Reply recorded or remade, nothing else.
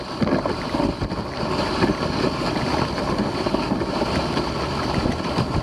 recorded